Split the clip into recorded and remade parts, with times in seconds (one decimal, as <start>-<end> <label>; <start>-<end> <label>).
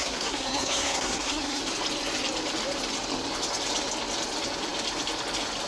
0.0-1.6 remade; 1.6-5.7 recorded